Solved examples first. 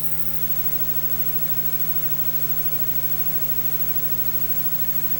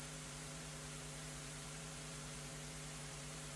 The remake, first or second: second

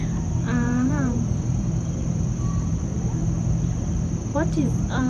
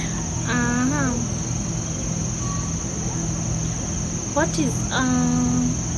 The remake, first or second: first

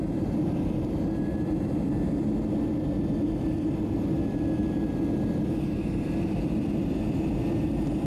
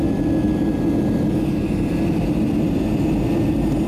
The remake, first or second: first